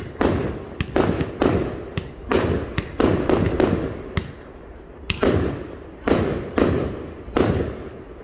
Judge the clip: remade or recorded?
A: recorded